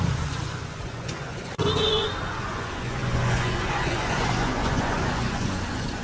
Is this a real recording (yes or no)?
no